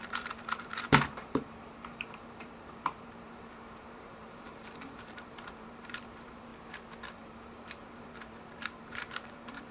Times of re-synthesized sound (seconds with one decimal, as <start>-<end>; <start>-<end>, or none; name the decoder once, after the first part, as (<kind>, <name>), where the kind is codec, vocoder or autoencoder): 0.0-6.5 (vocoder, BigVGAN v2); 7.1-9.7